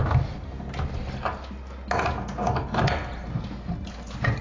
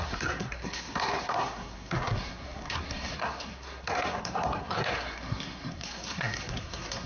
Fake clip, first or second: second